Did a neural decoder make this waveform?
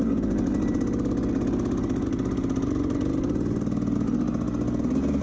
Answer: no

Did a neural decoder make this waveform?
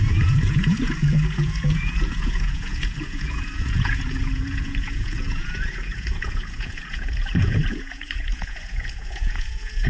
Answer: yes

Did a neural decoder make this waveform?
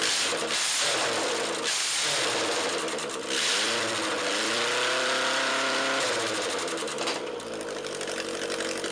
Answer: yes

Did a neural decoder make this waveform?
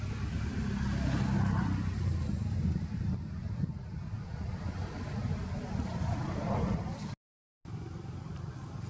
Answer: no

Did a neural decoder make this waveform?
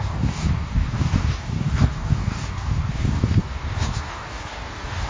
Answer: yes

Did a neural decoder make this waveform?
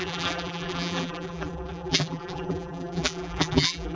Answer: yes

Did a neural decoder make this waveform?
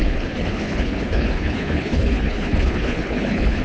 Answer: yes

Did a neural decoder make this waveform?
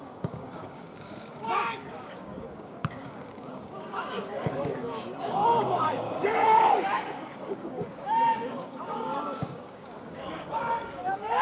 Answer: yes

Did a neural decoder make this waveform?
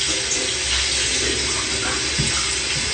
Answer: no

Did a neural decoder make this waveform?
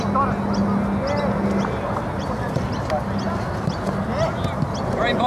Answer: no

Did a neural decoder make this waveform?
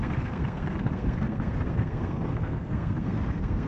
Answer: yes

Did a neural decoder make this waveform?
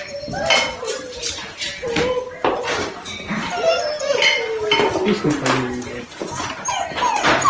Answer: no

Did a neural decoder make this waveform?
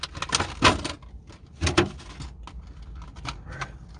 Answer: no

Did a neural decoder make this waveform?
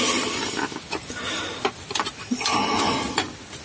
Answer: no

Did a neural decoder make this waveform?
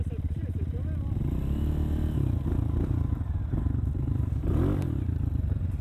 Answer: no